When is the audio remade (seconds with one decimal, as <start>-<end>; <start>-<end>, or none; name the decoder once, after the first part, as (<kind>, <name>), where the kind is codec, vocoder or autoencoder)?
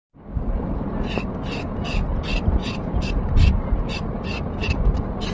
2.1-3.5 (vocoder, BigVGAN v2)